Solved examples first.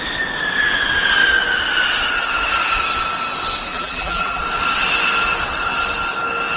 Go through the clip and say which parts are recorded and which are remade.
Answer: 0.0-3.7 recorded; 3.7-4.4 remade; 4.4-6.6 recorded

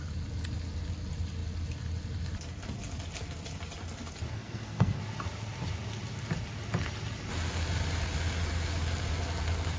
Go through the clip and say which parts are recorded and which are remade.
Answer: 0.0-4.3 recorded; 4.3-5.0 remade; 5.0-9.8 recorded

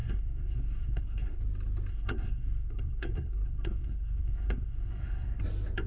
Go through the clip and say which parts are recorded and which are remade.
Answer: 0.0-1.4 remade; 1.4-1.9 recorded; 1.9-5.4 remade; 5.4-5.9 recorded

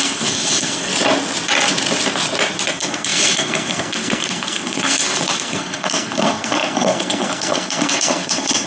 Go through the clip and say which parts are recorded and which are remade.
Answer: 0.0-0.9 remade; 0.9-2.7 recorded; 2.7-8.7 remade